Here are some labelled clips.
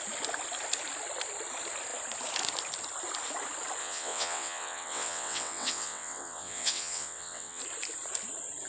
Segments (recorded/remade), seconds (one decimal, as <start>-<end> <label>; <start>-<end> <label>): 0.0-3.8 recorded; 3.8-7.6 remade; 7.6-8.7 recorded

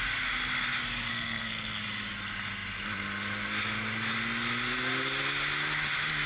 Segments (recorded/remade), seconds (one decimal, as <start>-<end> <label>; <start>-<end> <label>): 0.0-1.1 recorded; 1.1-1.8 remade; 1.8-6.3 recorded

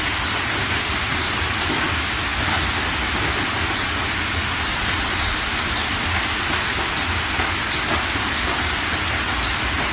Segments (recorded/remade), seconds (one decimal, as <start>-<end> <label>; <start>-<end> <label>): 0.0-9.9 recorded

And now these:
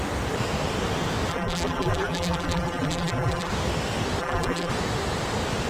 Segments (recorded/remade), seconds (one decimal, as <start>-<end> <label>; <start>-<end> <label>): 0.0-1.3 recorded; 1.3-3.5 remade; 3.5-4.2 recorded; 4.2-4.7 remade; 4.7-5.7 recorded